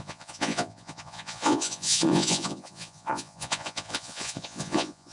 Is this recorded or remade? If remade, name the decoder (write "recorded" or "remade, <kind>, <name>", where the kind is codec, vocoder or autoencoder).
remade, vocoder, Vocos